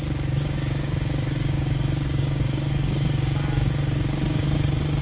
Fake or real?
fake